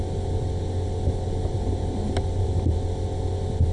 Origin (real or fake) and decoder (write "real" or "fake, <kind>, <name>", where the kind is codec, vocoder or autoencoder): real